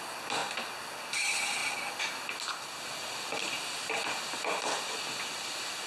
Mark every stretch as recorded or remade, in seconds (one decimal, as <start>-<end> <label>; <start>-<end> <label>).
0.0-5.9 recorded